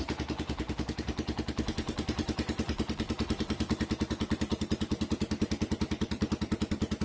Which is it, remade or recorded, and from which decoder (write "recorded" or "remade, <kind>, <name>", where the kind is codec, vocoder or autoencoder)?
remade, vocoder, BigVGAN v2